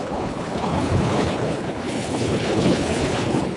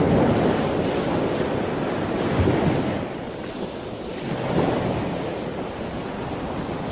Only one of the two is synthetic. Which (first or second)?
first